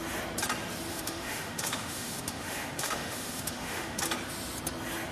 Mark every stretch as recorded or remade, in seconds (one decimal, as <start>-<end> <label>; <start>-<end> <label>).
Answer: 0.0-0.9 recorded; 0.9-4.0 remade; 4.0-5.1 recorded